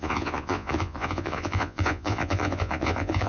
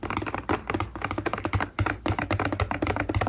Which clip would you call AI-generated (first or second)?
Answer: first